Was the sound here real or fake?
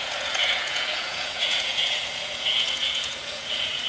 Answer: fake